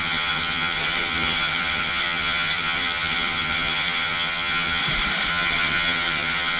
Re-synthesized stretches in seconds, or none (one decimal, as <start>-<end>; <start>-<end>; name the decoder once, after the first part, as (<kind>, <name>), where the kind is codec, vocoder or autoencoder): 0.0-4.8 (vocoder, HiFi-GAN); 5.3-6.6